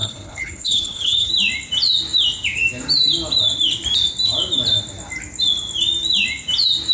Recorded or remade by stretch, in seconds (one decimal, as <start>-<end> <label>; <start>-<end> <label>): 0.0-1.3 remade; 1.3-6.9 recorded